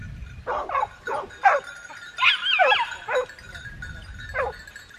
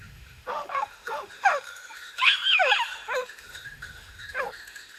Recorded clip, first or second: first